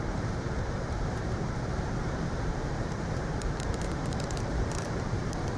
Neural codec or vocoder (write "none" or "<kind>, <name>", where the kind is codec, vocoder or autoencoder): vocoder, BigVGAN v2